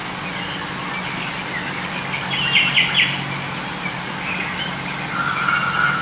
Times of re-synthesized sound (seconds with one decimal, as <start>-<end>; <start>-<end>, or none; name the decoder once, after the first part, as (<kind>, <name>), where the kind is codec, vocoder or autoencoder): none